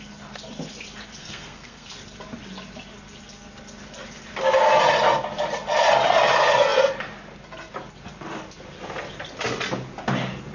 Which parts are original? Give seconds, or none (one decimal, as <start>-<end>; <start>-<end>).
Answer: 0.0-1.2; 1.9-10.5